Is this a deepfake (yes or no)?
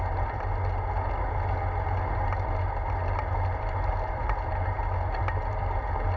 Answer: no